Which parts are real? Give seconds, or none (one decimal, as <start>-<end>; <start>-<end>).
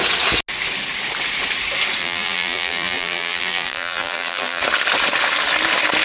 0.0-2.0; 4.6-6.0